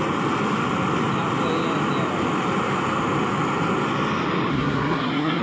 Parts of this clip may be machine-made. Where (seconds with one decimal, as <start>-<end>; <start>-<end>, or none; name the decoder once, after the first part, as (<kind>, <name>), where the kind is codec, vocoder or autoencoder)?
4.5-5.4 (codec, SNAC)